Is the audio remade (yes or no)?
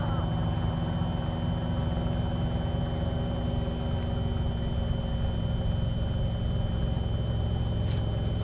no